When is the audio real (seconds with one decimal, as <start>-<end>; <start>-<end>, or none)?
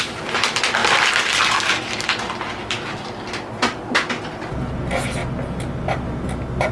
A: 0.0-6.7